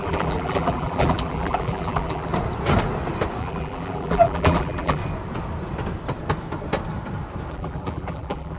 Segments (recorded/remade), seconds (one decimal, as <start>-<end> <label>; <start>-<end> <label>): 0.0-2.3 remade; 2.3-3.4 recorded; 3.4-5.0 remade; 5.0-7.5 recorded; 7.5-8.6 remade